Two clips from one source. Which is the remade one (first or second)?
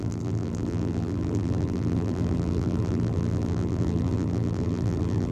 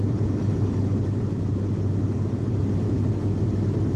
first